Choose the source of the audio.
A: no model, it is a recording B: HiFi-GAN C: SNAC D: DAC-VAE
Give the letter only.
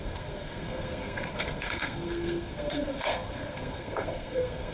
C